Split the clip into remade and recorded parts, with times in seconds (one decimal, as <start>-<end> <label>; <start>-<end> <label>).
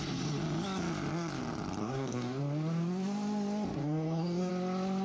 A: 0.0-1.8 recorded; 1.8-2.4 remade; 2.4-3.8 recorded; 3.8-4.5 remade; 4.5-5.0 recorded